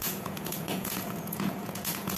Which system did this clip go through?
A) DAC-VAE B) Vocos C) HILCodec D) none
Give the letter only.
B